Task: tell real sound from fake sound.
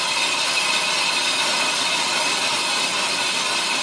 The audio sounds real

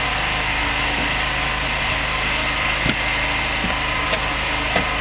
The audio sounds real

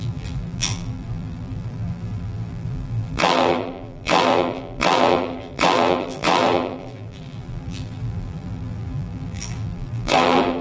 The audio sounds fake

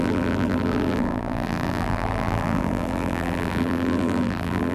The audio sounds fake